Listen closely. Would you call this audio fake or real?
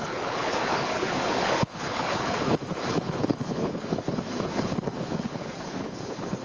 fake